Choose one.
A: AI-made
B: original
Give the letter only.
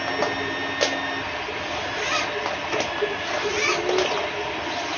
B